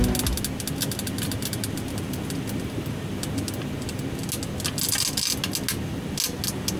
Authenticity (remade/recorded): recorded